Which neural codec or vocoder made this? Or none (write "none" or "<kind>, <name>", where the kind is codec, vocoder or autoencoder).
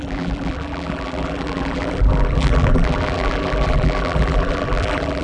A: vocoder, BigVGAN v2